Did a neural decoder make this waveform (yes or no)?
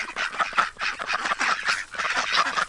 no